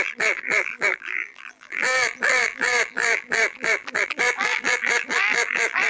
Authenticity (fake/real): fake